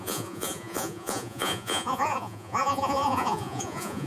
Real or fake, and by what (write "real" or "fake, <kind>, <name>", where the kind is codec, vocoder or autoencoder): fake, vocoder, Vocos